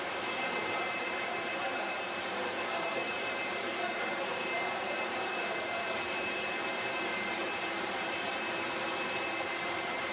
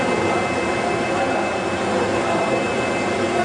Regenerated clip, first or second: first